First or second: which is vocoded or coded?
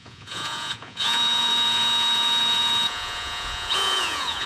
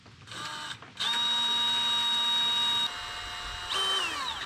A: first